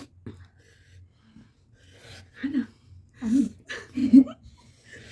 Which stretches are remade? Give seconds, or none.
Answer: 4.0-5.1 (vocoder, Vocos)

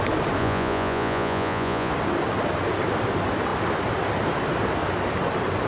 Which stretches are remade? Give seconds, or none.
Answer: 0.4-1.9 (vocoder, Vocos)

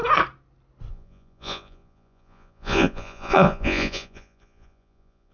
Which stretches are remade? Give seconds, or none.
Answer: 0.9-5.3 (vocoder, Vocos)

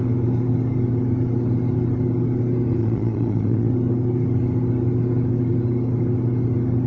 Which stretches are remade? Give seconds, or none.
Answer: 2.8-3.7 (vocoder, Vocos)

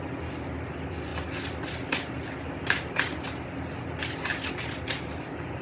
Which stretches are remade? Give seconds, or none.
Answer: none